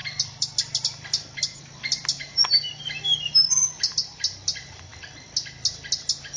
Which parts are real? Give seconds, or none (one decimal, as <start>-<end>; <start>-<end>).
0.0-6.4